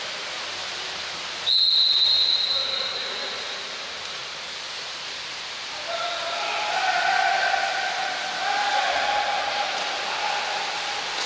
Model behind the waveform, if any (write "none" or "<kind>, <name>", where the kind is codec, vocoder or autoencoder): none